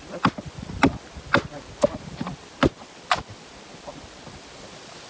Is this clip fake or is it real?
real